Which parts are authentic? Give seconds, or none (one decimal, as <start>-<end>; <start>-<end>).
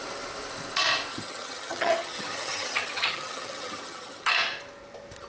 0.0-1.1; 4.3-5.3